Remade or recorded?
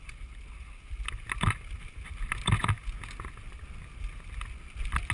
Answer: recorded